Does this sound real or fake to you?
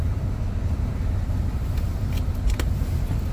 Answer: real